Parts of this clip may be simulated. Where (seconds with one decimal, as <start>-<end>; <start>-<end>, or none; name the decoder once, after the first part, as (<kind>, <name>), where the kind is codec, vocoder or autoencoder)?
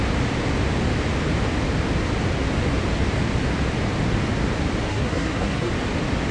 4.9-5.7 (codec, SNAC)